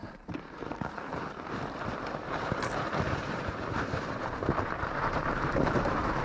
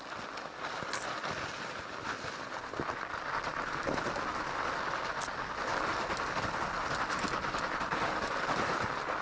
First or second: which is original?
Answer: second